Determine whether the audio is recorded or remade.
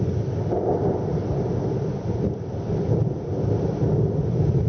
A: recorded